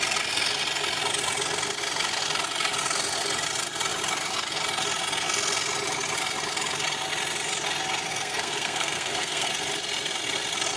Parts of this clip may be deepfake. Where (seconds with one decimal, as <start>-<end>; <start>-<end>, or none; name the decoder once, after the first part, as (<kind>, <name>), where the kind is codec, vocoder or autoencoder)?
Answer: 8.1-9.5 (codec, SNAC)